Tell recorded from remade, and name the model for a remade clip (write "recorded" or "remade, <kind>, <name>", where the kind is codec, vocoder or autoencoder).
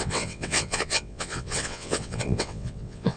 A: remade, vocoder, WaveNeXt